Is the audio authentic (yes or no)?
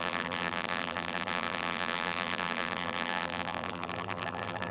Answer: no